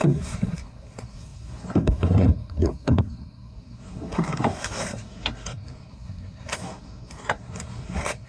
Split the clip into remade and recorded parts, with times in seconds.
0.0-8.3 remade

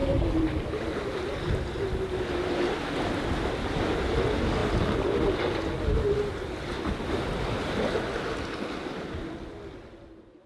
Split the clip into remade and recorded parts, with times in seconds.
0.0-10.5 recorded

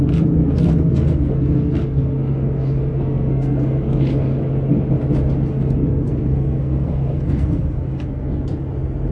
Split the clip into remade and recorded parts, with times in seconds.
0.0-0.4 recorded; 0.4-4.7 remade; 4.7-5.5 recorded; 5.5-8.3 remade; 8.3-9.1 recorded

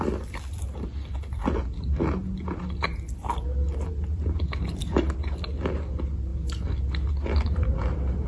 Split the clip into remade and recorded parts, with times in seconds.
0.0-8.3 recorded

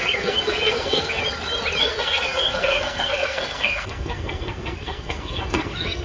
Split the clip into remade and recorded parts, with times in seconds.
0.0-1.2 remade; 1.2-1.8 recorded; 1.8-6.0 remade